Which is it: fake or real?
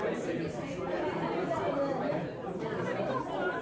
fake